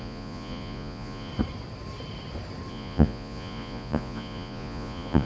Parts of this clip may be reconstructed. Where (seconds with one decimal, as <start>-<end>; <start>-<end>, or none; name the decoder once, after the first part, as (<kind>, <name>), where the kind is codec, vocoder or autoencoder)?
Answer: 0.0-1.3 (vocoder, Vocos); 2.7-5.3